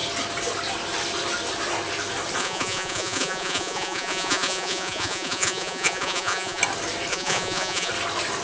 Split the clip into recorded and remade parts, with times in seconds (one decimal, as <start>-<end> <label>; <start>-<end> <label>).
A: 0.0-2.4 recorded; 2.4-6.6 remade; 6.6-7.1 recorded; 7.1-7.9 remade; 7.9-8.4 recorded